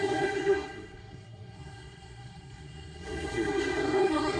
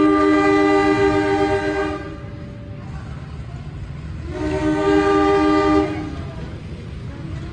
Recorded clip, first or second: second